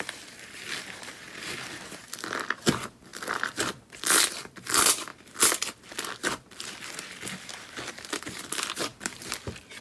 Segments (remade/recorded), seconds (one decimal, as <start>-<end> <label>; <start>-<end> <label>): 0.0-5.1 remade; 5.1-7.9 recorded; 7.9-9.8 remade